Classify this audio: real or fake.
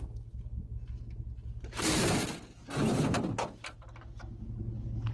real